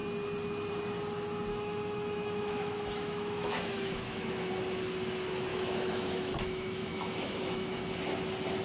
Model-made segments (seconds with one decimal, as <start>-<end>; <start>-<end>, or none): 1.5-4.5; 5.5-7.8